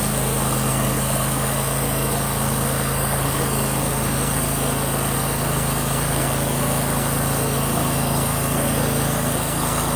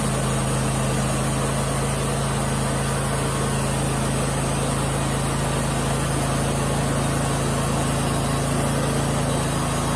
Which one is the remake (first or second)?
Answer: first